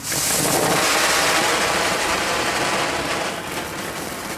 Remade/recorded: recorded